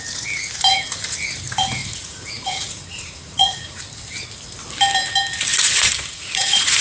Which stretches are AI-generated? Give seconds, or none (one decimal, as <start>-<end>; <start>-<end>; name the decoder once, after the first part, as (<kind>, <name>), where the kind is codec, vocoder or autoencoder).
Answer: 1.8-3.8 (vocoder, Vocos); 5.5-6.8